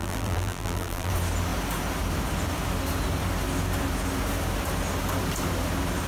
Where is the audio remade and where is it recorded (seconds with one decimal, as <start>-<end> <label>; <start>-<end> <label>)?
0.0-1.1 remade; 1.1-6.1 recorded